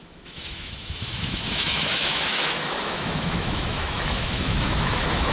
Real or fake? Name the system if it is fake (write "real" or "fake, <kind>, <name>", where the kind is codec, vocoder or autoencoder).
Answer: fake, autoencoder, DAC-VAE